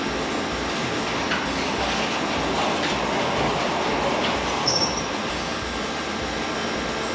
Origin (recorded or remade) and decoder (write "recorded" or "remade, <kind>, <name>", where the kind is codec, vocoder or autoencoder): recorded